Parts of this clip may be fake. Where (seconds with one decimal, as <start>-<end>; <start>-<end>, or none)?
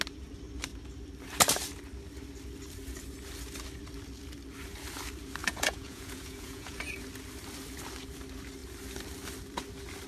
5.4-6.8